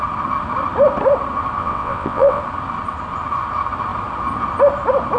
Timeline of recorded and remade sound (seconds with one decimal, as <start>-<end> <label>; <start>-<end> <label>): 0.0-1.6 recorded; 1.6-2.4 remade; 2.4-5.2 recorded